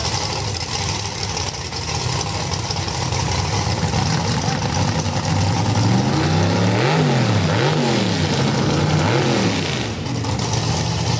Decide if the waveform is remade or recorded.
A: recorded